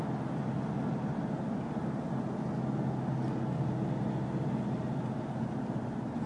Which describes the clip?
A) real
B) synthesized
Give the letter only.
A